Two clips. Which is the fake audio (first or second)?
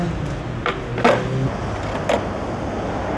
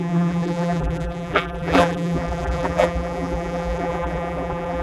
second